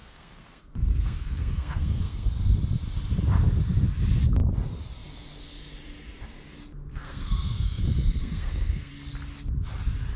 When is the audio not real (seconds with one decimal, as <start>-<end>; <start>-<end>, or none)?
0.0-2.3; 6.9-7.8; 8.2-8.9

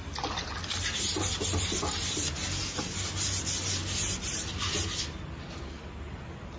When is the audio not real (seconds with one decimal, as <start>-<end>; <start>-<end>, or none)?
none

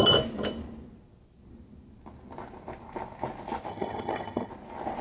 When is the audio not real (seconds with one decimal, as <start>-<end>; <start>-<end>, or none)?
3.7-4.5

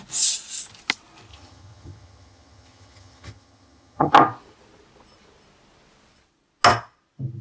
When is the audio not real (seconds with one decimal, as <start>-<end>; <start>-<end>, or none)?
1.3-4.1